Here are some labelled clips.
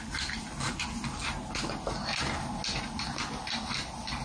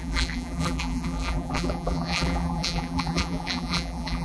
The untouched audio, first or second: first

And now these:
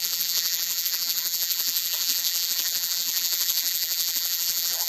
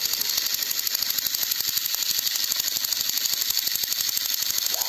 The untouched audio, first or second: second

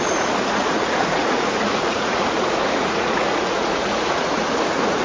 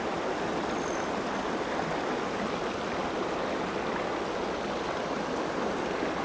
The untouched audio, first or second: second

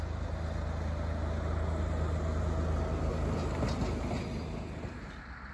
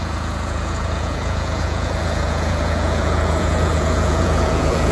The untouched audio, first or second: first